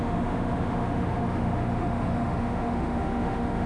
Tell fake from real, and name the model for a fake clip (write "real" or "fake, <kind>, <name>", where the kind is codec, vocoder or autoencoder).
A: fake, autoencoder, DAC-VAE